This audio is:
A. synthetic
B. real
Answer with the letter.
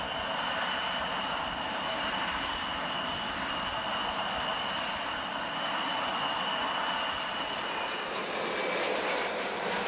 B